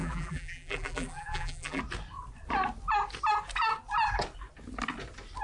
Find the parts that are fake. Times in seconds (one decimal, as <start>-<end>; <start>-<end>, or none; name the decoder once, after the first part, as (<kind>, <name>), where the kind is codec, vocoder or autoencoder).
0.0-1.8 (vocoder, BigVGAN v2)